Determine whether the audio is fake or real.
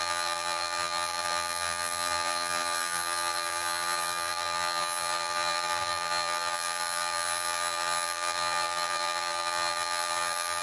fake